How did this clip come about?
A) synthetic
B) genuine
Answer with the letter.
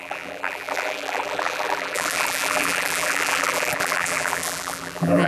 A